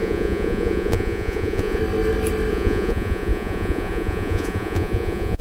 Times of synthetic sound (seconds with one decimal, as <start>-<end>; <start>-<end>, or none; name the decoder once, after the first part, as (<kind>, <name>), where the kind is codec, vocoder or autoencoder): 0.0-1.8 (vocoder, Vocos); 2.5-5.4